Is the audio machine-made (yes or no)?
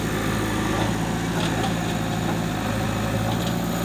no